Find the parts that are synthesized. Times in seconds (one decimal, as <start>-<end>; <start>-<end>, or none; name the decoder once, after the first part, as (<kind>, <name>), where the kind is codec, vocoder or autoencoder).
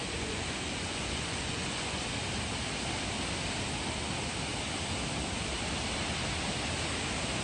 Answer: 0.0-2.0 (vocoder, Vocos)